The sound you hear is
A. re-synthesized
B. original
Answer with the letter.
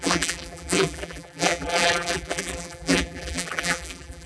A